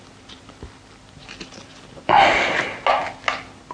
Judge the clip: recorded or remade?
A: recorded